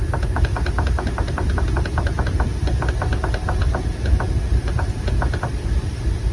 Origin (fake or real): real